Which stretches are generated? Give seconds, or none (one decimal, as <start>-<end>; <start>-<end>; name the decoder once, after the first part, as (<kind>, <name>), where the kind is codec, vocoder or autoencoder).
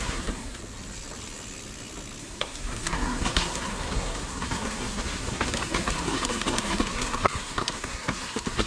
0.0-0.6 (codec, SNAC); 2.2-8.7